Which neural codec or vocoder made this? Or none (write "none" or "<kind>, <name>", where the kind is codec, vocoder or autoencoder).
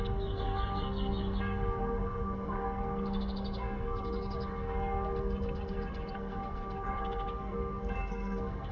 codec, SNAC